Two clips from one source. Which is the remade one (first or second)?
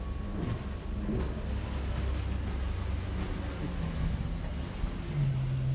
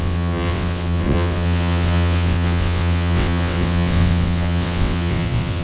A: second